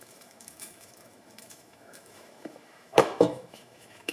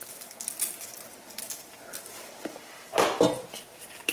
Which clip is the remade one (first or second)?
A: first